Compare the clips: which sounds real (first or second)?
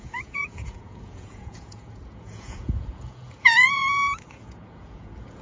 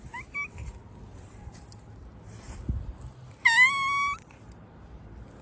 second